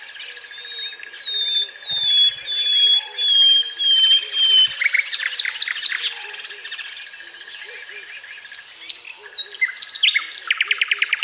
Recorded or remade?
recorded